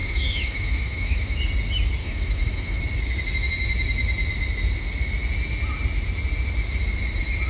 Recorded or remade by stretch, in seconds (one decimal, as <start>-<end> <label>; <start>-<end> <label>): 0.0-1.4 remade; 1.4-2.0 recorded; 2.0-2.8 remade; 2.8-7.5 recorded